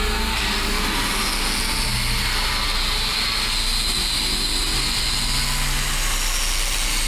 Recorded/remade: recorded